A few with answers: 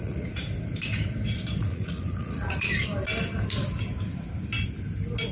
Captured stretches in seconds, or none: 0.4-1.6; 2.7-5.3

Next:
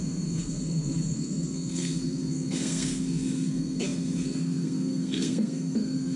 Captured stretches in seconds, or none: none